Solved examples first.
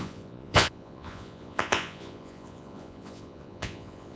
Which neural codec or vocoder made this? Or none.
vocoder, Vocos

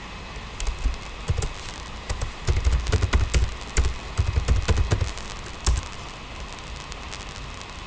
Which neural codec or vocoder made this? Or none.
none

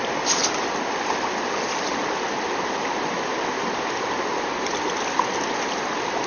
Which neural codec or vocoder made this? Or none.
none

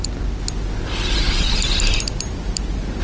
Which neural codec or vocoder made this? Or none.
none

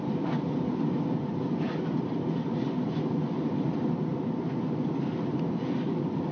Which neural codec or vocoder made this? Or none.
none